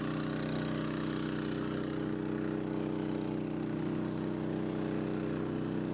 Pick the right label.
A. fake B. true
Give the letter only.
B